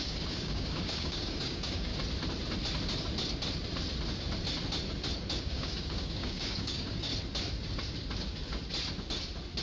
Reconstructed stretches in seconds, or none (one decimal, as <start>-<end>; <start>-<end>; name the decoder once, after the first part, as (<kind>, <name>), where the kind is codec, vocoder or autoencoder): 0.0-1.9 (codec, DAC); 5.4-7.1